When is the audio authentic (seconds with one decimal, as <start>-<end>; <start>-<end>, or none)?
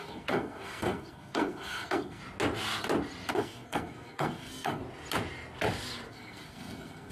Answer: 2.2-3.3; 4.8-6.1